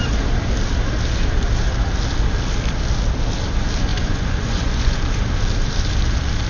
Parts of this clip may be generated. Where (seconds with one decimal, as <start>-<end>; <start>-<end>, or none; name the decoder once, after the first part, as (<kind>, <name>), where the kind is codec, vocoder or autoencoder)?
3.9-5.0 (vocoder, Vocos)